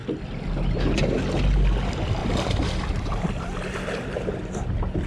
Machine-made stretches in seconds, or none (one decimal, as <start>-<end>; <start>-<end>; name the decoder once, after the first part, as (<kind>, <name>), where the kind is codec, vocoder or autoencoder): 0.0-1.0 (vocoder, BigVGAN v2); 2.2-4.1